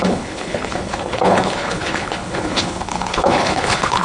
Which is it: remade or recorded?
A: remade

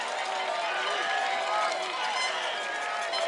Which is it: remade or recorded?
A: recorded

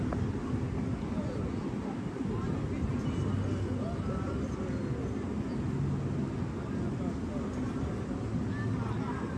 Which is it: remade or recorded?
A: recorded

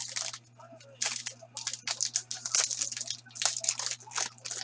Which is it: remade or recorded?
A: recorded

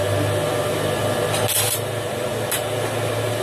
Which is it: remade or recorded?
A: recorded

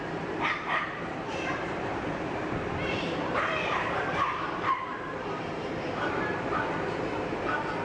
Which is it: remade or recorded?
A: remade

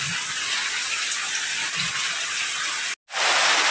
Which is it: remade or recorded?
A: recorded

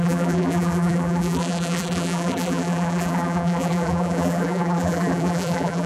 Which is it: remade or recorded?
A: remade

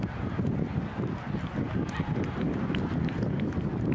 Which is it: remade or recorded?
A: remade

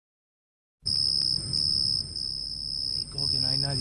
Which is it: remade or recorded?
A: recorded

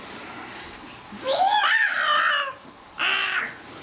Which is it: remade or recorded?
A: recorded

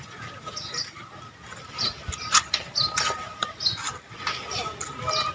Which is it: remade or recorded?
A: recorded